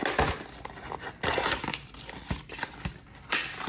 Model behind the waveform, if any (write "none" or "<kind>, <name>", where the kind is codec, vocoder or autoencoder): none